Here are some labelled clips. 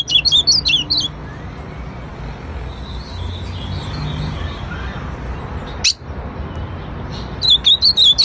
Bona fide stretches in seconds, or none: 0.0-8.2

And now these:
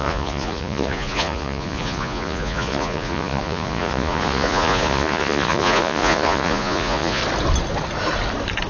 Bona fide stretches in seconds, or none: 7.2-8.7